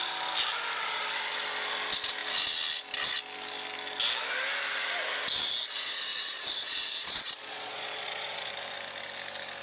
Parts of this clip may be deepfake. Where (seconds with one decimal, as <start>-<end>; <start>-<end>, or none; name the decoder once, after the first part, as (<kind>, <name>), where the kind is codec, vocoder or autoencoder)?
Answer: 6.1-8.5 (vocoder, Vocos)